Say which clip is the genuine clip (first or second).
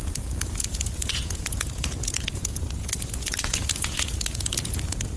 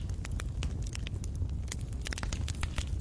second